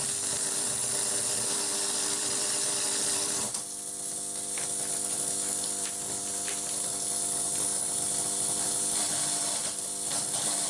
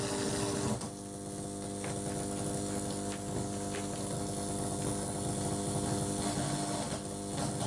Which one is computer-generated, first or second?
first